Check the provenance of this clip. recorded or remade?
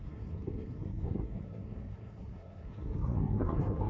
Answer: remade